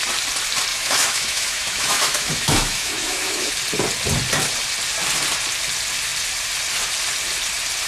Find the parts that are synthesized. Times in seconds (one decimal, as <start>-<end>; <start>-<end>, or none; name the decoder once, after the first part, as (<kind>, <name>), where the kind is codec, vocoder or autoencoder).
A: 0.7-3.5 (autoencoder, DAC-VAE)